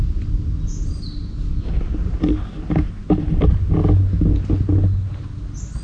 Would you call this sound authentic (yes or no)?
yes